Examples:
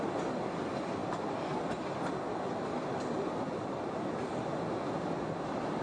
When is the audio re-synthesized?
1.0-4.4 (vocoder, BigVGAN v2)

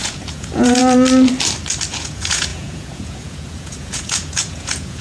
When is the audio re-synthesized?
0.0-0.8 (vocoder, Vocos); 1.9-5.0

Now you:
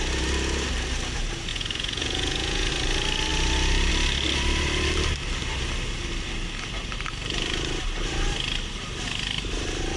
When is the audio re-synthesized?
1.5-2.7 (vocoder, Vocos)

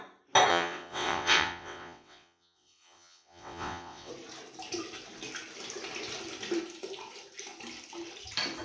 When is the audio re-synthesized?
0.5-4.1 (vocoder, WaveNeXt)

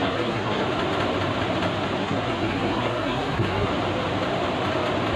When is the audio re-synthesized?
0.0-0.6 (codec, SNAC); 2.0-3.7

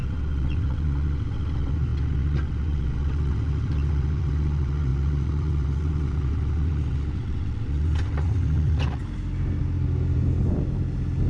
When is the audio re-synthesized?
0.0-9.0 (vocoder, WaveNeXt)